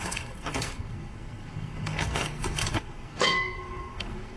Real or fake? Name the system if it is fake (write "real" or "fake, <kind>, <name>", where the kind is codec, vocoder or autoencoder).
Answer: fake, codec, SNAC